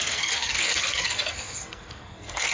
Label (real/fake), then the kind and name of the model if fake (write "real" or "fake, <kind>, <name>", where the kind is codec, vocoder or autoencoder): fake, codec, SNAC